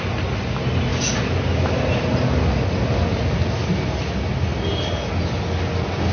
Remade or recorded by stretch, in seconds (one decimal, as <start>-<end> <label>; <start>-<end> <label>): 0.0-6.1 recorded